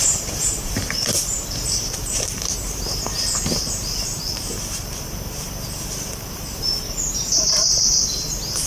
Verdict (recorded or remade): remade